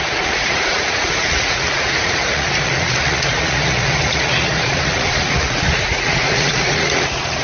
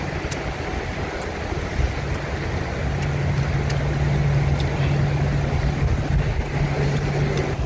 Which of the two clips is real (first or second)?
second